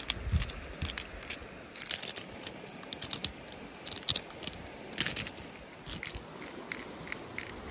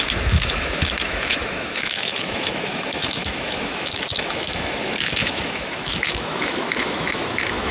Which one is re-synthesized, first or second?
second